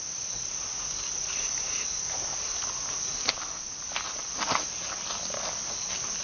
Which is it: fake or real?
real